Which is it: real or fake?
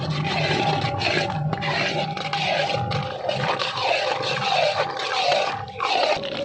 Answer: real